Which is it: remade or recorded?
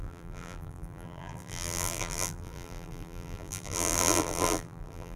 remade